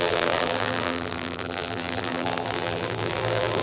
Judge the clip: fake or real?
fake